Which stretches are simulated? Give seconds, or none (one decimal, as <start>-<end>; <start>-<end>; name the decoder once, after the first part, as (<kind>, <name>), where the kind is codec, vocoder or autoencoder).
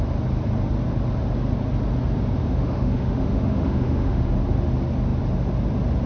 2.4-4.2 (autoencoder, DAC-VAE)